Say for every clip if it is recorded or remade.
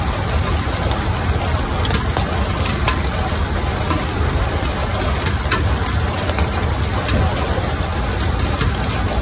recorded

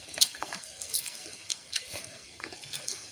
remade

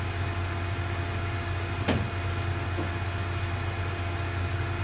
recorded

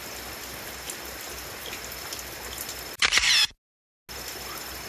recorded